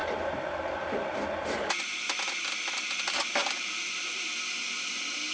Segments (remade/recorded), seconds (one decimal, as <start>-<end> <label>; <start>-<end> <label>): 0.0-5.3 recorded